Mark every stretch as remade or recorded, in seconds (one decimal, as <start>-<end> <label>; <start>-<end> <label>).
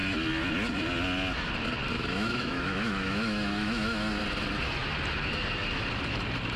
0.0-1.9 recorded; 1.9-4.2 remade; 4.2-6.6 recorded